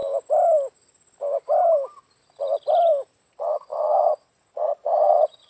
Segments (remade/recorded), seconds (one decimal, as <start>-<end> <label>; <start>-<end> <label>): 0.0-3.3 recorded; 3.3-5.5 remade